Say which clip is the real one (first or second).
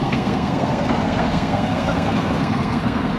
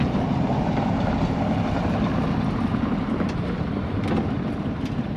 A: second